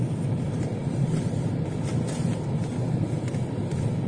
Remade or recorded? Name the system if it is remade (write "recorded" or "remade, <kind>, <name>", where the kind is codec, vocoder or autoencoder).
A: recorded